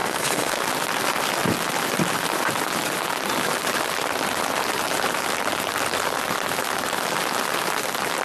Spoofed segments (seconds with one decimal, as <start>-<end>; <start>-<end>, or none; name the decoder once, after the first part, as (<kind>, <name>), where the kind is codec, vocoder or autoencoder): 0.0-0.6 (codec, SNAC)